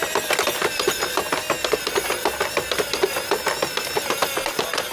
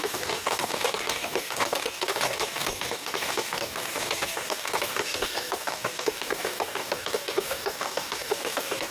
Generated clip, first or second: second